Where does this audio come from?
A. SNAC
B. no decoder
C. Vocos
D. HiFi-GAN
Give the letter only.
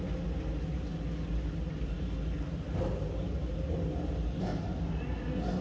B